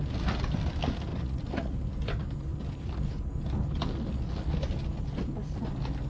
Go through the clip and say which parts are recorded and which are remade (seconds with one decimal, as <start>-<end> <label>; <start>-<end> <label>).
0.0-1.1 recorded; 1.1-1.9 remade; 1.9-6.1 recorded